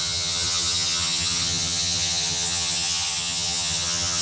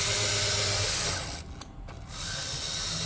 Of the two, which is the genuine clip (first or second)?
second